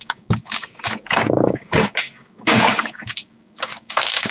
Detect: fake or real fake